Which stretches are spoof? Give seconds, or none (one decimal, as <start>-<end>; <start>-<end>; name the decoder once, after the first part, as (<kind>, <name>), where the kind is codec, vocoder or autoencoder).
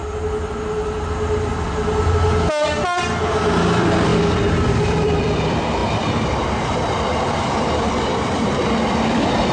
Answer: 3.4-9.5 (vocoder, BigVGAN v2)